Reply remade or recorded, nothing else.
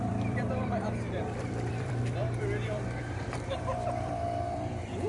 remade